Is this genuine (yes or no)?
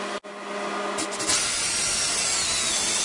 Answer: yes